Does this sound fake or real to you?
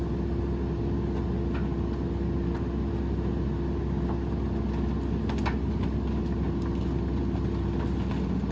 real